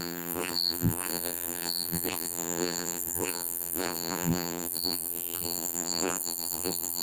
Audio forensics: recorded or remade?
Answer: remade